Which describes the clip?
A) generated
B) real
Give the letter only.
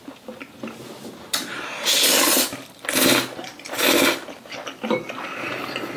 B